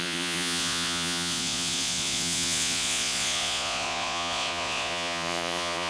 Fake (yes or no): yes